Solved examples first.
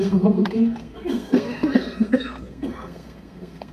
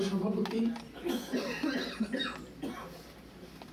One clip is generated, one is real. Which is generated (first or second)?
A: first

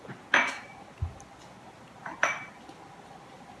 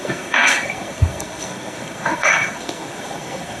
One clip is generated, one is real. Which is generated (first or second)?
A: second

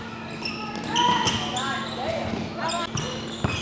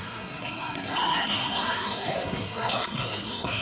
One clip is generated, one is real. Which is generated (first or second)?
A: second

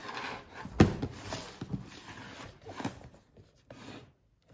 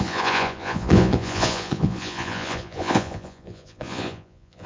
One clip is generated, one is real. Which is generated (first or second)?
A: second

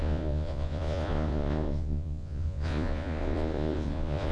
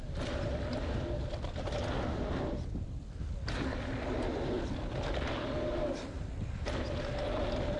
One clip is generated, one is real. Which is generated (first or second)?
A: first